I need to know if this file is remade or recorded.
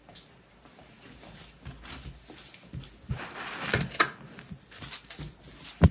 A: recorded